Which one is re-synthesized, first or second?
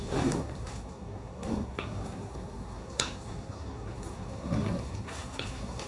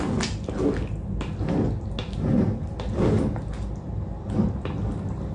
first